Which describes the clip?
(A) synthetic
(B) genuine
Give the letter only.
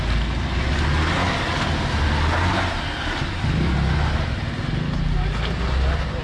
B